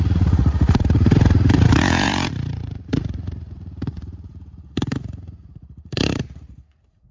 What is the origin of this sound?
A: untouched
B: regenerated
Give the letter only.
B